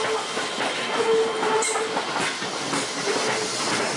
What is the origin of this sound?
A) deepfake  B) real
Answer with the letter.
B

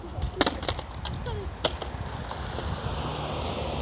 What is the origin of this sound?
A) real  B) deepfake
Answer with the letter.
A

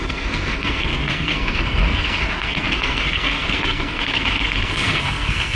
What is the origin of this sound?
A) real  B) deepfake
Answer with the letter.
B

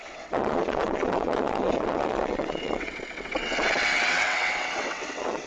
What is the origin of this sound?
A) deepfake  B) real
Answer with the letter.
A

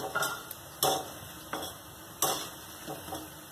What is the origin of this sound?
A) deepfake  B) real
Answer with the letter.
B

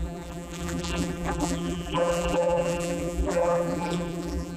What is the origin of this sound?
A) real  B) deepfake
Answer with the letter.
B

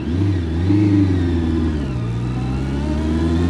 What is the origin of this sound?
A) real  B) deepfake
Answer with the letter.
A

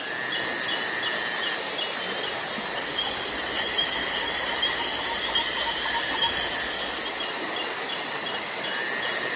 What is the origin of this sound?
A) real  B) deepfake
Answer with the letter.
A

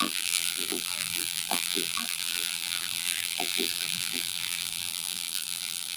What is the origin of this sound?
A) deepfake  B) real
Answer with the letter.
A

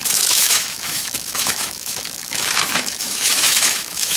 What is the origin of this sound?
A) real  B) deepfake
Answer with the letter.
B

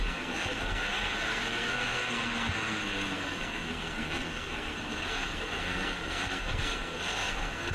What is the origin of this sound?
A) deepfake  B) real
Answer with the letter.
A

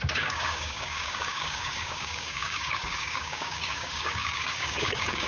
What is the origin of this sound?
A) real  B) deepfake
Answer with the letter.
B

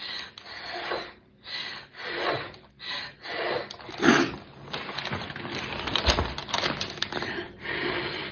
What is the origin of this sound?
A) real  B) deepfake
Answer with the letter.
A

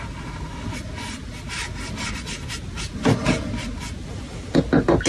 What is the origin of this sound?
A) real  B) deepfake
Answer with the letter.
A